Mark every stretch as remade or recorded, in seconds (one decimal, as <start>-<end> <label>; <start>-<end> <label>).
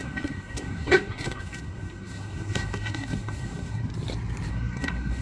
0.0-3.9 remade; 3.9-4.5 recorded; 4.5-5.2 remade